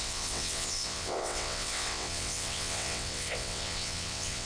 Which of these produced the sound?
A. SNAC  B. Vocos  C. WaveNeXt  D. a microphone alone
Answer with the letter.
C